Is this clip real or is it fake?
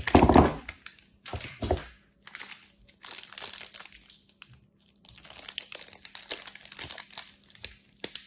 real